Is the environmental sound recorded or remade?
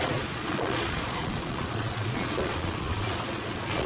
remade